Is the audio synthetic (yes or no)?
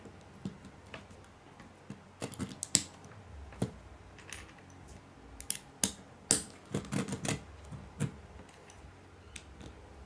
no